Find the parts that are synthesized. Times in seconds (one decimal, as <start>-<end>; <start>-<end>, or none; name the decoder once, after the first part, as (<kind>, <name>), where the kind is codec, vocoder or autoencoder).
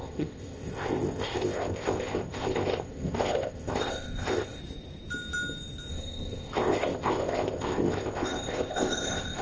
0.0-4.6 (codec, ZipCodec); 5.9-9.4